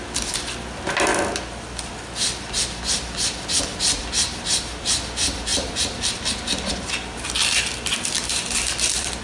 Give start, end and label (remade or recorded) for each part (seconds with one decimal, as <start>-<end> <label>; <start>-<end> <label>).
0.0-5.5 recorded; 5.5-9.2 remade